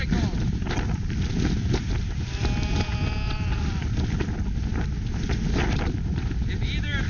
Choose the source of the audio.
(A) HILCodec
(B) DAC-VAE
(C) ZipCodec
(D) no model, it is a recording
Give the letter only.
D